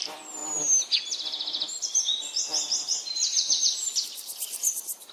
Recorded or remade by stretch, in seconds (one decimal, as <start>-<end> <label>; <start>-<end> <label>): 0.0-0.4 remade; 0.4-3.1 recorded; 3.1-5.1 remade